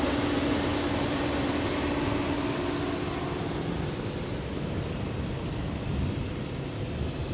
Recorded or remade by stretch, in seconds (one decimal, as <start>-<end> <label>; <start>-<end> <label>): 0.0-7.3 recorded